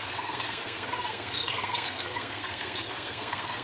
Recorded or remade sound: remade